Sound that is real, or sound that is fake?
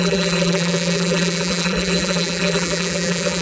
fake